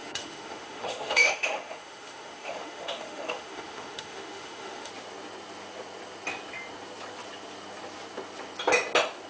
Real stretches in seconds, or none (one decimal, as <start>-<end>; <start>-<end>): 4.9-9.3